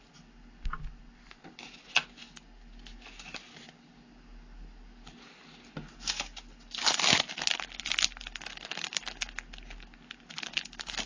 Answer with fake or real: real